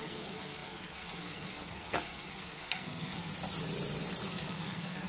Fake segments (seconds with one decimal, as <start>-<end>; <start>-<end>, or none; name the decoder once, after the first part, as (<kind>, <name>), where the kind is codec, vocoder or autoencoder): 0.0-3.3 (codec, SNAC); 4.3-5.1